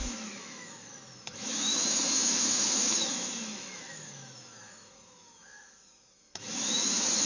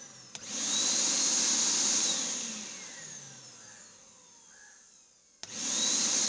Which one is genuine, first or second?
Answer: second